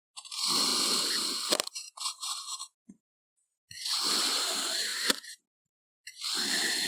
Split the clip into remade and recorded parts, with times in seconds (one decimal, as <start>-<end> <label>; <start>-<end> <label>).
0.0-0.7 remade; 0.7-1.7 recorded; 1.7-6.9 remade